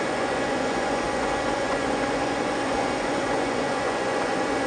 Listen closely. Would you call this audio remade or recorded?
remade